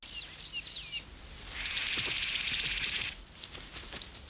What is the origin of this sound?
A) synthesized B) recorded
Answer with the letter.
B